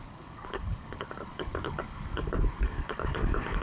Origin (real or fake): fake